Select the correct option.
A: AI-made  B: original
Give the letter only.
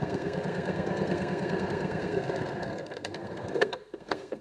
A